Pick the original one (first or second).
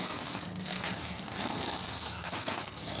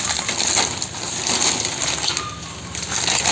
second